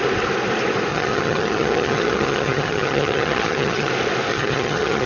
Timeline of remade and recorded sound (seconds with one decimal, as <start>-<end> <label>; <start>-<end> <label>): 0.0-0.9 recorded; 0.9-3.9 remade; 3.9-4.3 recorded; 4.3-5.1 remade